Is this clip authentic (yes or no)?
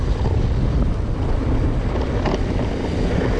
yes